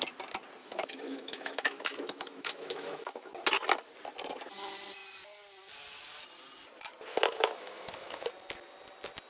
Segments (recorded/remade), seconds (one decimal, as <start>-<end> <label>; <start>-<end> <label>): 0.0-0.6 recorded; 0.6-3.3 remade; 3.3-7.1 recorded; 7.1-8.3 remade; 8.3-9.3 recorded